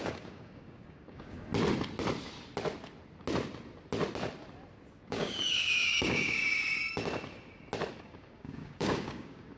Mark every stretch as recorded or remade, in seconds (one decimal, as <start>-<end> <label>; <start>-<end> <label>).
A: 0.0-1.5 remade; 1.5-4.9 recorded; 4.9-6.4 remade; 6.4-8.0 recorded; 8.0-9.6 remade